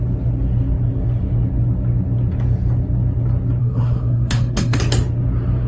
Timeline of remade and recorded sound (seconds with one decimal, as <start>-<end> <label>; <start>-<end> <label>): 0.0-3.6 recorded; 3.6-4.8 remade; 4.8-5.7 recorded